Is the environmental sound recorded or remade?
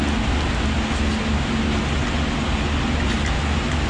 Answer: recorded